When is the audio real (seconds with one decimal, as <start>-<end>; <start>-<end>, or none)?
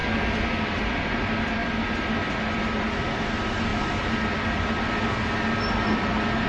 0.0-6.5